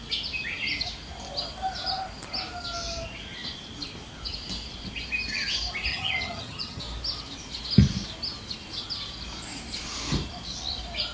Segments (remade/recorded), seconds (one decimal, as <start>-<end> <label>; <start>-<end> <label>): 0.0-5.9 recorded; 5.9-6.8 remade; 6.8-11.1 recorded